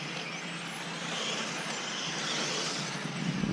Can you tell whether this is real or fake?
real